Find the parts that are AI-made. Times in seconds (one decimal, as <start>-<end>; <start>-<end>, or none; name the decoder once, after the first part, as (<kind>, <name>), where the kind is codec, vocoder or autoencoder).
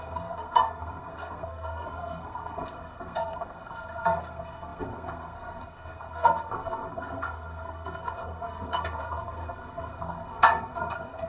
0.0-11.3 (codec, SNAC)